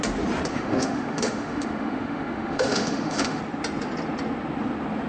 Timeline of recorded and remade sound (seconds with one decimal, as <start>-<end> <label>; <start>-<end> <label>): 0.0-0.5 recorded; 0.5-3.4 remade; 3.4-5.1 recorded